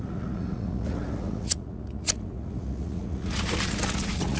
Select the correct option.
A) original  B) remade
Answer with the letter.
B